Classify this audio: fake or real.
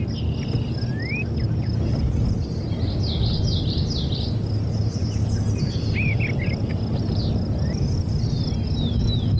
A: real